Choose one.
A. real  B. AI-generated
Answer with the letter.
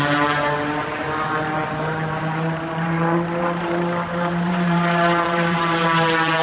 B